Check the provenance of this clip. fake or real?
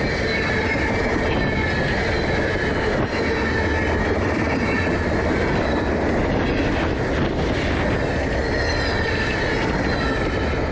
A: real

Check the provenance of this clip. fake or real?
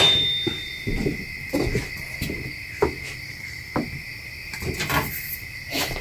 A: real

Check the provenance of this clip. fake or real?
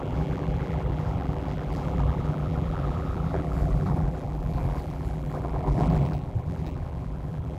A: fake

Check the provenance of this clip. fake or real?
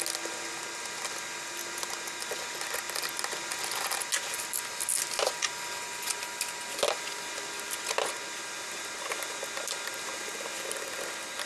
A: real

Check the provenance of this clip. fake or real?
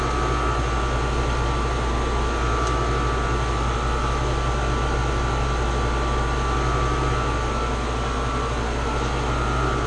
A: real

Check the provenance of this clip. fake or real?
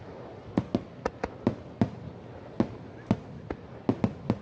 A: real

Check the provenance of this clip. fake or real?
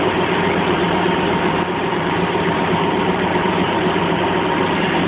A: fake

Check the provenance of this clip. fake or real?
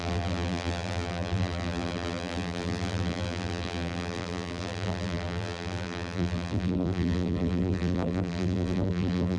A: fake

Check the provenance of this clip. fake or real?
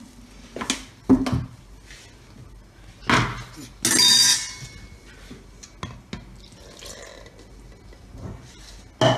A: real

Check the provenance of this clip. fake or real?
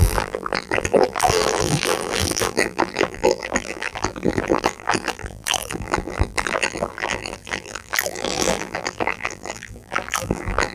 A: fake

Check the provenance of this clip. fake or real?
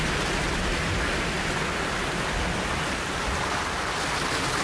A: real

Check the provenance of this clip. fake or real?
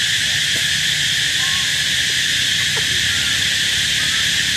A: real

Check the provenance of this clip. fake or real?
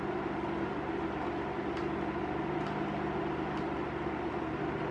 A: real